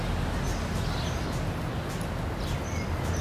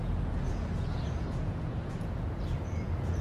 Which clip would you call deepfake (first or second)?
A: second